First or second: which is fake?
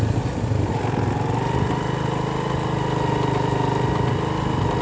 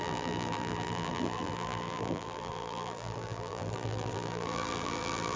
second